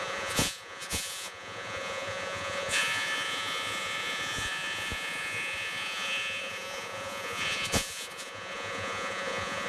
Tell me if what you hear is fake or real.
fake